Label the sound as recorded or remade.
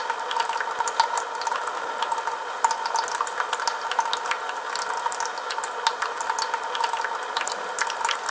recorded